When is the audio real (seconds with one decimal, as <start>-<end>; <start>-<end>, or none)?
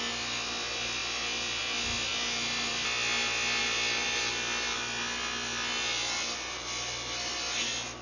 0.0-1.0; 1.6-3.6; 4.2-8.0